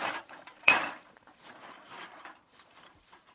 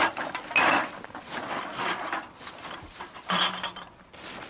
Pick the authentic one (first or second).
second